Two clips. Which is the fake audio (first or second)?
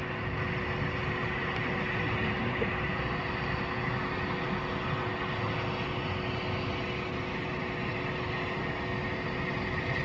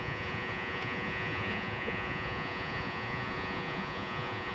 second